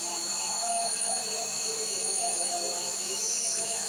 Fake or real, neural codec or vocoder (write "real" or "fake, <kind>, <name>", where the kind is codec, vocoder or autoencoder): fake, autoencoder, DAC-VAE